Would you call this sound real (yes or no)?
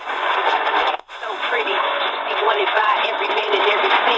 no